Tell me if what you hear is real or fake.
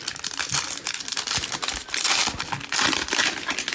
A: real